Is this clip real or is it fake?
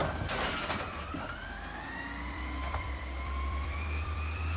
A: fake